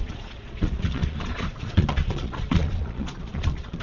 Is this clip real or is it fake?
fake